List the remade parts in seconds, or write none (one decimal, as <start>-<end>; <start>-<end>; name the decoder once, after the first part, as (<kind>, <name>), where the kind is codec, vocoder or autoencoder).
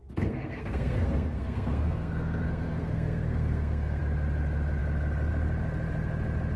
0.0-4.0 (codec, SNAC)